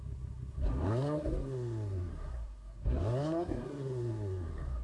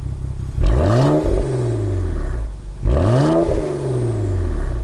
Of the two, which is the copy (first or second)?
first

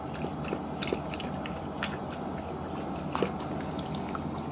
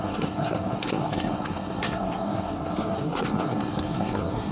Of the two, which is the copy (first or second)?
second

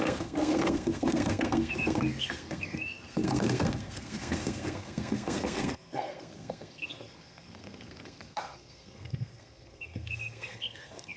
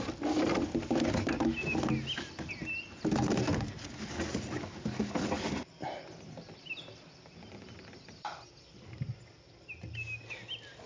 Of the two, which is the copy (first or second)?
first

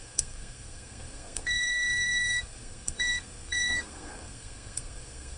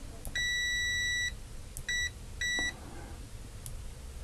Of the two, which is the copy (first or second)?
first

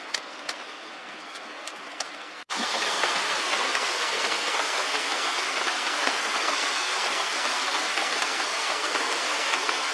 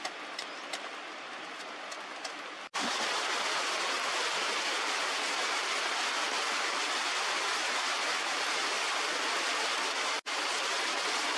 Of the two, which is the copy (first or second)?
first